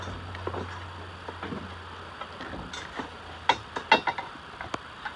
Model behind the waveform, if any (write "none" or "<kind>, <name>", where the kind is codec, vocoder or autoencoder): none